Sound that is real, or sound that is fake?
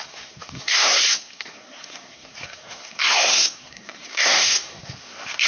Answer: fake